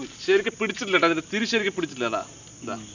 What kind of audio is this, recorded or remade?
recorded